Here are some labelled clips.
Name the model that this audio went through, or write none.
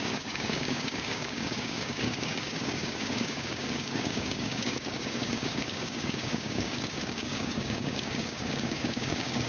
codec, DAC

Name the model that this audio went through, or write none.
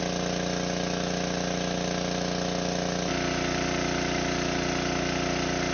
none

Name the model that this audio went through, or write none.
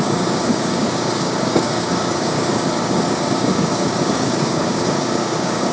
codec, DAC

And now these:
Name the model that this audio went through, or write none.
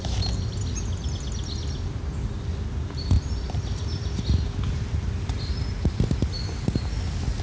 none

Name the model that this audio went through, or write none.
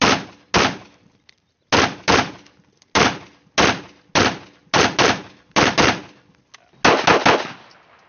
none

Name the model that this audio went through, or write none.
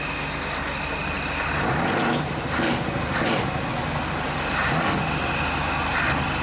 none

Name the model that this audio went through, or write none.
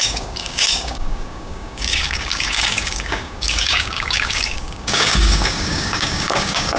codec, DAC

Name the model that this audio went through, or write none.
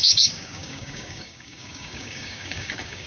codec, DAC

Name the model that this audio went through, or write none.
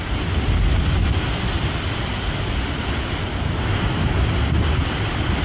none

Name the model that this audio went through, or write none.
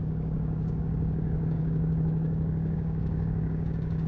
codec, DAC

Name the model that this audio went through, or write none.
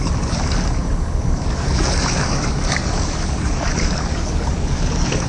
codec, DAC